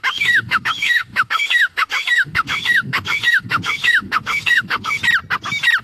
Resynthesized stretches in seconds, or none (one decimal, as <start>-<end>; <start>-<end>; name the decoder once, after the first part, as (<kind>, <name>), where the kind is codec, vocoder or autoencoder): 0.0-5.0 (autoencoder, DAC-VAE)